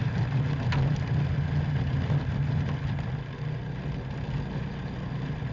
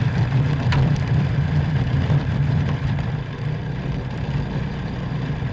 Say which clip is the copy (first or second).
second